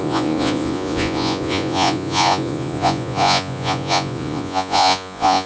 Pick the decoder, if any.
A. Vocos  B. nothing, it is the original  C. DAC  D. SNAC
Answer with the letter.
A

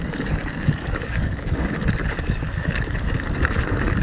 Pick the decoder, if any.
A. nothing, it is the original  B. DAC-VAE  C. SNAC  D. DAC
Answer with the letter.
D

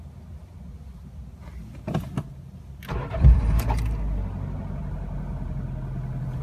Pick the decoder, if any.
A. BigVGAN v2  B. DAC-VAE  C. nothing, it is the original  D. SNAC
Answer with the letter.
C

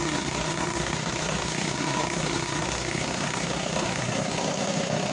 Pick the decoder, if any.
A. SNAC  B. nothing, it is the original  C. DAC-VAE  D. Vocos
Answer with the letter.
A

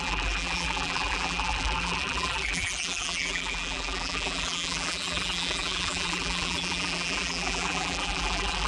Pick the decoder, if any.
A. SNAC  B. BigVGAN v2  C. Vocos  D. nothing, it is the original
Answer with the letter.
B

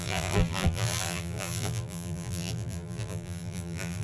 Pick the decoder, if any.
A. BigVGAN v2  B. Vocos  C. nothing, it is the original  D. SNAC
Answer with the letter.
A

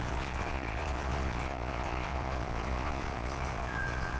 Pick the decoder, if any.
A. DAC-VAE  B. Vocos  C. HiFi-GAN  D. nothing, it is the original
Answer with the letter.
B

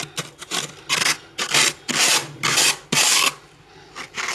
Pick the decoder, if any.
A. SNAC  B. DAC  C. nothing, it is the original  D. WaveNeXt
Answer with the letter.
C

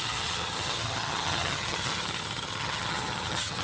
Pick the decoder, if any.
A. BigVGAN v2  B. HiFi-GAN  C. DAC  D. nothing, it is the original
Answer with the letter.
B